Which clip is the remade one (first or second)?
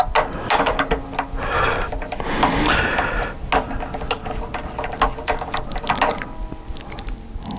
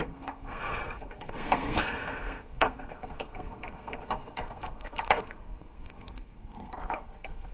second